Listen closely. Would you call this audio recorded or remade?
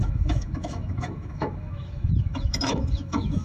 remade